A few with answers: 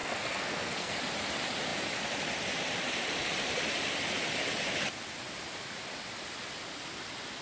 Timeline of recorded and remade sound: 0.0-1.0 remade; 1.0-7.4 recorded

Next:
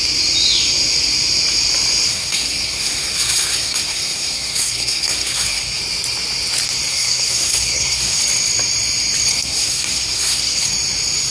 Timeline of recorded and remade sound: 0.0-2.1 recorded; 2.1-5.8 remade; 5.8-6.9 recorded; 6.9-8.2 remade; 8.2-9.3 recorded; 9.3-10.7 remade; 10.7-11.3 recorded

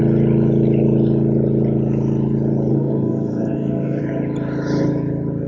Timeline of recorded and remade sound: 0.0-2.7 recorded; 2.7-4.0 remade; 4.0-5.5 recorded

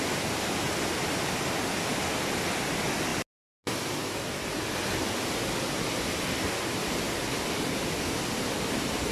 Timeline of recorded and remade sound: 0.0-9.1 recorded

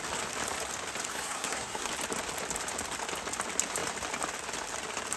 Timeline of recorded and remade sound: 0.0-1.1 recorded; 1.1-1.9 remade; 1.9-5.2 recorded

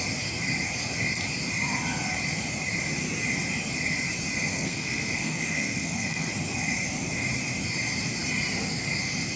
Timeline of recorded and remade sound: 0.0-4.5 recorded; 4.5-6.3 remade; 6.3-9.4 recorded